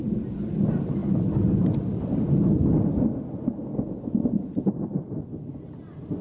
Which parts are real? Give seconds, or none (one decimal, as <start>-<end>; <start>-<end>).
0.0-6.2